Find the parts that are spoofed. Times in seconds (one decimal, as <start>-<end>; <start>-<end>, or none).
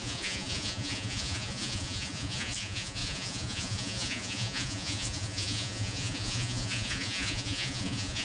0.0-8.2